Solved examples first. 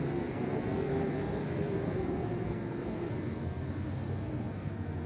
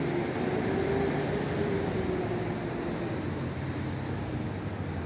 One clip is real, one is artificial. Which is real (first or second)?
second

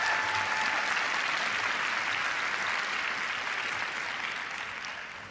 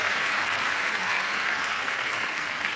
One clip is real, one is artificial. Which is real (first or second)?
first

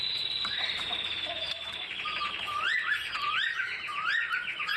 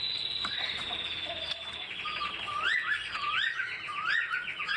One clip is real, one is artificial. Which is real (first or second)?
second